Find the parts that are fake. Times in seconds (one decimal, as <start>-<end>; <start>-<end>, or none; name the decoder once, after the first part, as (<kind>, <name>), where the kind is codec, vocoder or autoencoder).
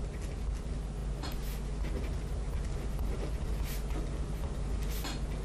none